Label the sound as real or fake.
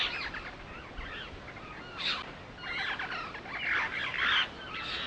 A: real